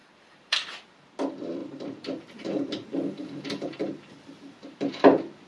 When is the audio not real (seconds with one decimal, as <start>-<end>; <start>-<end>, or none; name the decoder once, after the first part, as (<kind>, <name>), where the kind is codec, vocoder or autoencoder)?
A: 0.0-1.1 (vocoder, BigVGAN v2); 1.6-4.9